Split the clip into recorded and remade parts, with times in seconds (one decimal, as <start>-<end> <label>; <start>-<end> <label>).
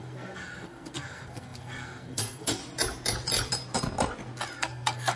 0.0-2.6 remade; 2.6-4.6 recorded; 4.6-5.2 remade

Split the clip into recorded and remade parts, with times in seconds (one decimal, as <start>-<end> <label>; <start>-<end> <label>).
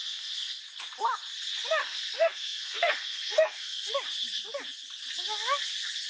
0.0-0.6 remade; 0.6-1.8 recorded; 1.8-3.9 remade; 3.9-6.1 recorded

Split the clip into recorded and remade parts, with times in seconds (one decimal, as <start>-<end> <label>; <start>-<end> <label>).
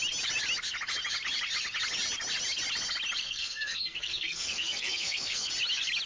0.0-3.2 recorded; 3.2-5.5 remade; 5.5-6.1 recorded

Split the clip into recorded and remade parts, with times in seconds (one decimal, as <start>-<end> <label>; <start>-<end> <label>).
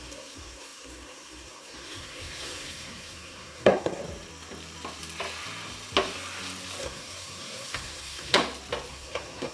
0.0-4.0 remade; 4.0-6.8 recorded; 6.8-8.4 remade; 8.4-8.9 recorded; 8.9-9.5 remade